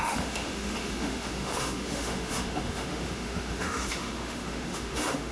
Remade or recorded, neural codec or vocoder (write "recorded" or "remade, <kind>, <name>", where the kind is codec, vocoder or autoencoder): remade, autoencoder, DAC-VAE